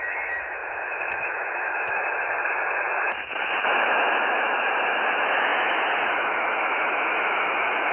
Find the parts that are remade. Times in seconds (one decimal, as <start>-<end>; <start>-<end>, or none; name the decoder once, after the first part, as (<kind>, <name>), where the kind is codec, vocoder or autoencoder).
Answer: 0.0-7.9 (autoencoder, DAC-VAE)